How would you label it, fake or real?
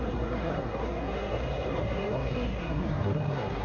fake